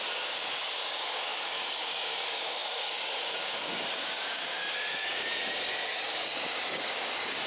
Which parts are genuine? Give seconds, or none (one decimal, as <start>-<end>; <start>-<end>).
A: none